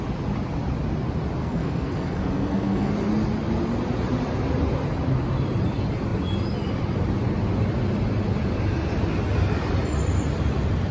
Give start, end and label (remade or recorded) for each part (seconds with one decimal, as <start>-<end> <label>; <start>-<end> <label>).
0.0-1.4 recorded; 1.4-2.9 remade; 2.9-10.9 recorded